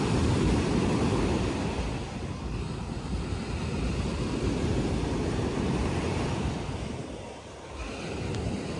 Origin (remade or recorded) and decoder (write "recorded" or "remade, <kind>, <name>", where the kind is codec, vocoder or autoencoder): recorded